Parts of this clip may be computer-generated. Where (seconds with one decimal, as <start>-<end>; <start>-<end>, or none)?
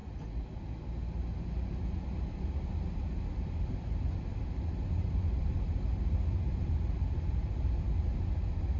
none